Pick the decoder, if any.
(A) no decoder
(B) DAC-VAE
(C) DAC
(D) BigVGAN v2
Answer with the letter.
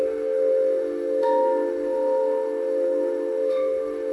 B